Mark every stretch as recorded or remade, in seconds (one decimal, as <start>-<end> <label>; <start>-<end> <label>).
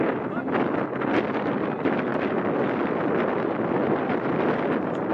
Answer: 0.0-5.1 recorded